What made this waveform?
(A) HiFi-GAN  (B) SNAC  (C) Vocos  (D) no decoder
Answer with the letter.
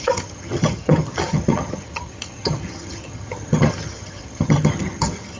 A